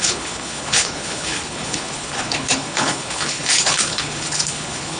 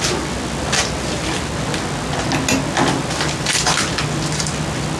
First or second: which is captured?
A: second